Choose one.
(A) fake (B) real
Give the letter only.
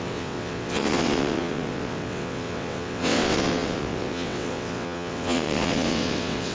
A